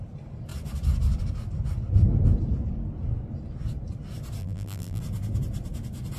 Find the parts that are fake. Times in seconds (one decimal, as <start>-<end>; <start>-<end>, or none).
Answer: 4.4-5.0